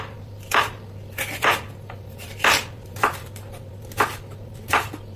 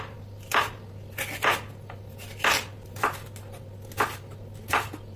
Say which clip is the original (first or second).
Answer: second